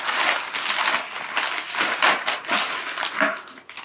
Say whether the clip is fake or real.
real